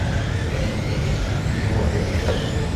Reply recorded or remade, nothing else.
recorded